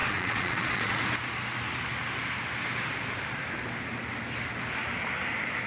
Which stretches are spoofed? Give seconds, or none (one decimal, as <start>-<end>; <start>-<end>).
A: 0.0-1.0